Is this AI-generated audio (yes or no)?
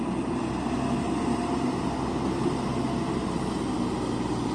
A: no